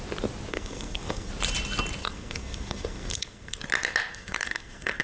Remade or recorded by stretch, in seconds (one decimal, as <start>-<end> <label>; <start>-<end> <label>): 0.0-0.5 recorded; 0.5-1.3 remade; 1.3-2.0 recorded; 2.0-3.6 remade; 3.6-4.1 recorded; 4.1-5.0 remade

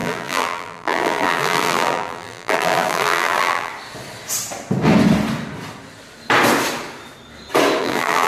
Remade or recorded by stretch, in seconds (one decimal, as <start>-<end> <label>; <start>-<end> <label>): 0.0-3.7 remade; 3.7-7.8 recorded; 7.8-8.3 remade

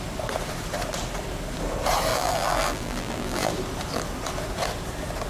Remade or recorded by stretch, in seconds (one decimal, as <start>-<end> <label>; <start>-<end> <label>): 0.0-2.1 recorded; 2.1-3.5 remade; 3.5-5.3 recorded

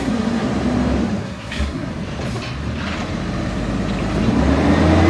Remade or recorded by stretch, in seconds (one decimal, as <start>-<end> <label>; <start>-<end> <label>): 0.0-0.5 remade; 0.5-1.2 recorded; 1.2-1.9 remade; 1.9-5.1 recorded

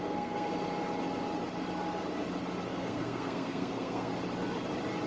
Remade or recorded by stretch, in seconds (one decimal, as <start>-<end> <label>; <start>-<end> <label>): 0.0-0.5 remade; 0.5-2.7 recorded; 2.7-4.1 remade; 4.1-5.1 recorded

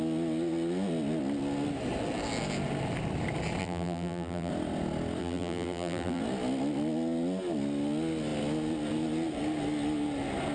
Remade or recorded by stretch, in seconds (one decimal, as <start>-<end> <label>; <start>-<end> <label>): 0.0-3.6 recorded; 3.6-4.5 remade; 4.5-5.2 recorded; 5.2-6.2 remade; 6.2-10.5 recorded